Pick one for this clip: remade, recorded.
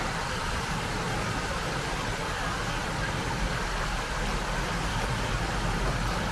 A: recorded